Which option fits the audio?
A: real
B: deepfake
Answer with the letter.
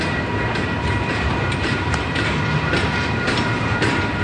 B